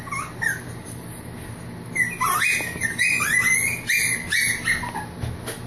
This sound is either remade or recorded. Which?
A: recorded